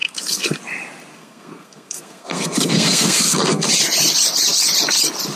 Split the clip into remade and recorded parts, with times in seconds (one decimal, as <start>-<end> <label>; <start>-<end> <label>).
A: 0.0-0.6 remade; 0.6-1.1 recorded; 1.1-3.7 remade; 3.7-5.4 recorded